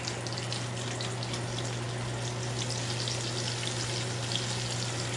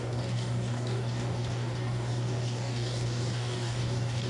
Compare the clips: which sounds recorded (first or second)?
first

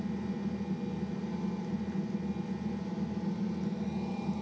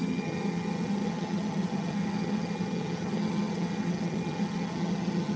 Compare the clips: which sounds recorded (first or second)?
first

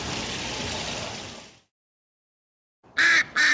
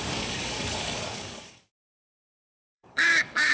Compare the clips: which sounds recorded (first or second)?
first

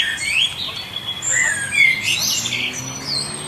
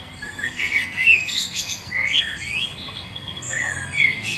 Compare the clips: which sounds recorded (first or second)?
first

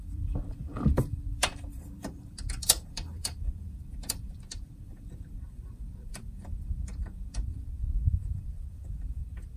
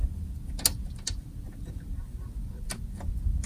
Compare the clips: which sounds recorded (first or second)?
second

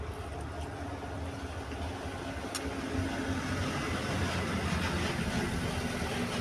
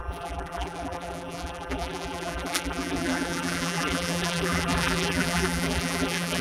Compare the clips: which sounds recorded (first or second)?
first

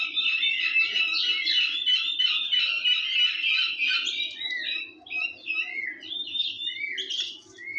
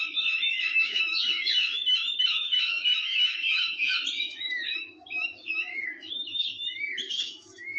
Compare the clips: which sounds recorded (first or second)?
first